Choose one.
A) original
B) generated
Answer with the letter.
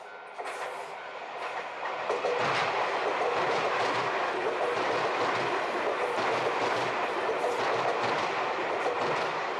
A